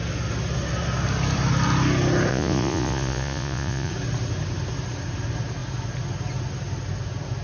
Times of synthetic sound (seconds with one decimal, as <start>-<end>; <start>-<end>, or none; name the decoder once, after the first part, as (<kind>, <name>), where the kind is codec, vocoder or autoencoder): 2.3-3.9 (vocoder, Vocos)